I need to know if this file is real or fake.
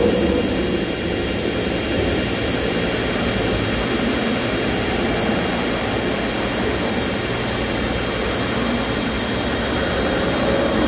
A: real